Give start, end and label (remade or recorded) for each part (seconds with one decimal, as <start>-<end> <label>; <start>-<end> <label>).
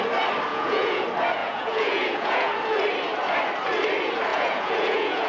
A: 0.0-0.5 recorded; 0.5-1.0 remade; 1.0-1.4 recorded; 1.4-2.5 remade; 2.5-4.3 recorded; 4.3-5.3 remade